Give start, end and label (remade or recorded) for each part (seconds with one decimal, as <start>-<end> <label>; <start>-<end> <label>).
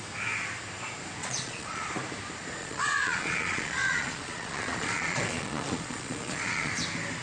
0.0-1.2 recorded; 1.2-1.9 remade; 1.9-2.6 recorded; 2.6-6.7 remade; 6.7-7.2 recorded